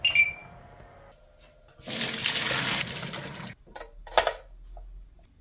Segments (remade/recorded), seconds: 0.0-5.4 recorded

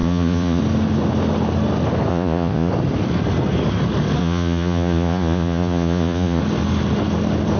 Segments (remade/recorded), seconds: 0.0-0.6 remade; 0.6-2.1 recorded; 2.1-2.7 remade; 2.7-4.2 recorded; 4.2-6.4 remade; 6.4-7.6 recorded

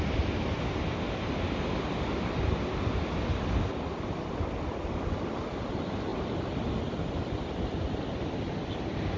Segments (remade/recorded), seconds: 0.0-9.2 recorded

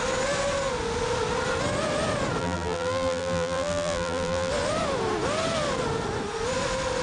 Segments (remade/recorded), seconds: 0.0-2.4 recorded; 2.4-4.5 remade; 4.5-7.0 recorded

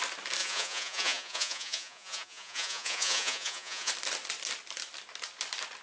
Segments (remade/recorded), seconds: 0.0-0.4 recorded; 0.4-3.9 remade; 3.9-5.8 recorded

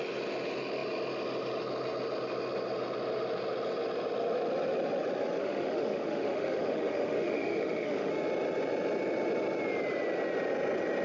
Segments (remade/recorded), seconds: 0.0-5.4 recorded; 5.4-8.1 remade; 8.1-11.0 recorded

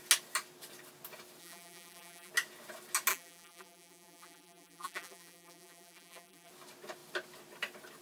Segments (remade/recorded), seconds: 0.0-1.4 recorded; 1.4-2.3 remade; 2.3-3.1 recorded; 3.1-6.5 remade; 6.5-8.0 recorded

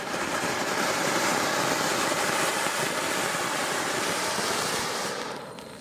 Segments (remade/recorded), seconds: 0.0-1.3 remade; 1.3-4.8 recorded; 4.8-5.8 remade